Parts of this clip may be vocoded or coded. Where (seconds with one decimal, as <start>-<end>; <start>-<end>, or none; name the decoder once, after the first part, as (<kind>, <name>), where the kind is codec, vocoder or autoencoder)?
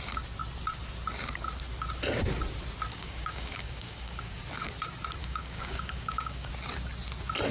2.9-4.4 (codec, DAC); 5.2-6.5